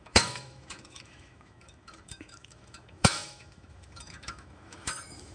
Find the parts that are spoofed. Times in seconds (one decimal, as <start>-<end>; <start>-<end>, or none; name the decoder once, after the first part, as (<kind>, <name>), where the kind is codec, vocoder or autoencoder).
0.0-5.3 (autoencoder, DAC-VAE)